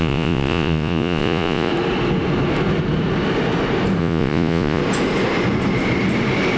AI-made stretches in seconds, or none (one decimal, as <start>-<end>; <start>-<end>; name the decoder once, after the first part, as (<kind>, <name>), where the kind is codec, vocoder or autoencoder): 0.0-1.7 (vocoder, Vocos); 4.0-4.8